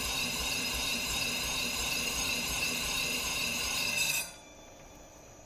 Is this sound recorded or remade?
remade